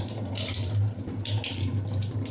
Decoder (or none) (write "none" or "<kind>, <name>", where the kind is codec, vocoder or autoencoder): vocoder, BigVGAN v2